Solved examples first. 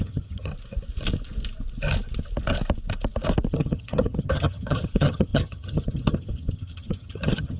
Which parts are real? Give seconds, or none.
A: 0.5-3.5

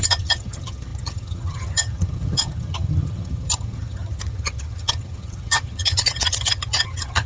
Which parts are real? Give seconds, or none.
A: none

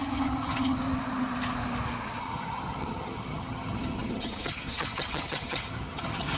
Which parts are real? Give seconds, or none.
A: 0.8-2.2

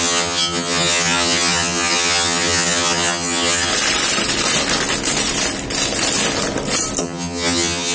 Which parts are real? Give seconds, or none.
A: 3.7-7.0

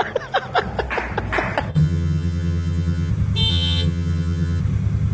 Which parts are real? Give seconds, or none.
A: 0.0-1.7; 3.1-3.5; 4.6-5.1

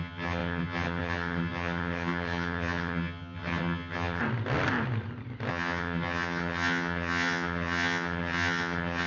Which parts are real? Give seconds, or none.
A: 4.2-5.5

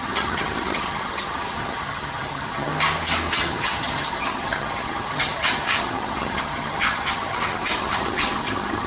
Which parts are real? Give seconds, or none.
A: 2.7-3.3